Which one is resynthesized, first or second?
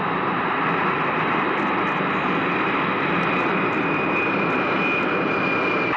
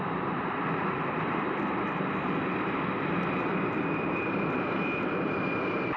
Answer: second